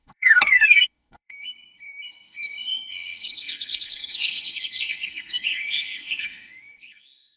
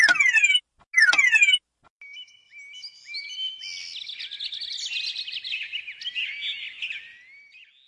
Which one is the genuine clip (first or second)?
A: second